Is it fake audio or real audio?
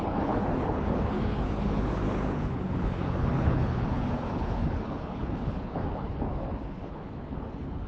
fake